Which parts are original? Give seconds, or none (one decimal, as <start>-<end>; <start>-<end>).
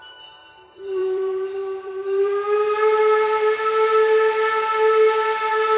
0.0-0.4; 3.6-5.8